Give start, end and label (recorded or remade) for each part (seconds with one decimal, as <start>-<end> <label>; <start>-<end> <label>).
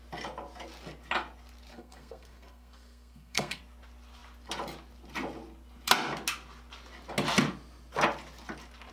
0.0-1.7 recorded; 1.7-3.6 remade; 3.6-8.9 recorded